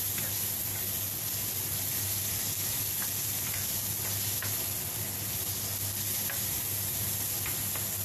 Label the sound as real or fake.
real